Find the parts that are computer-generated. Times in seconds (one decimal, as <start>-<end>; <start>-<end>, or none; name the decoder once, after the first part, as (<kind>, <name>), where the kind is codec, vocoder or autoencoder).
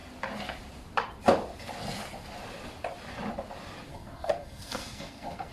3.9-5.5 (codec, SNAC)